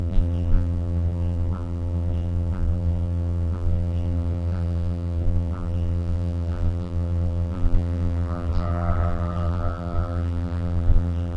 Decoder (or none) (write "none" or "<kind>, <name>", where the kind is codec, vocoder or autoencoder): vocoder, BigVGAN v2